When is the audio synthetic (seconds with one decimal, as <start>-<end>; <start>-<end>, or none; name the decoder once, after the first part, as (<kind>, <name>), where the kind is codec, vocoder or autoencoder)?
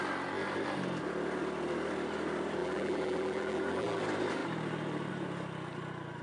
2.6-4.0 (vocoder, BigVGAN v2)